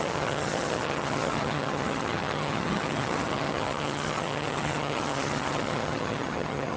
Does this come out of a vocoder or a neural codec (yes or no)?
yes